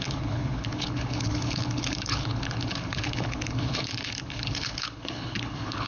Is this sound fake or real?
fake